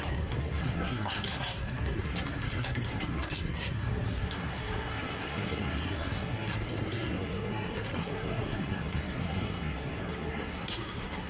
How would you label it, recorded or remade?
remade